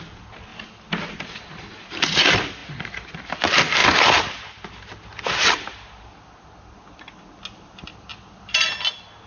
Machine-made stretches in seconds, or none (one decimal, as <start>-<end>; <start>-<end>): none